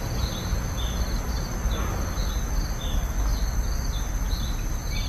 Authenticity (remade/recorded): recorded